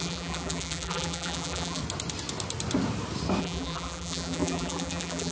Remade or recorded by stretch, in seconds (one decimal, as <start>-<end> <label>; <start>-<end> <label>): 0.0-1.8 remade; 1.8-3.4 recorded; 3.4-5.3 remade